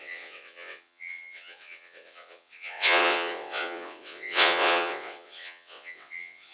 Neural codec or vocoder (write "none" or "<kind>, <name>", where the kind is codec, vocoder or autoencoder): vocoder, WaveNeXt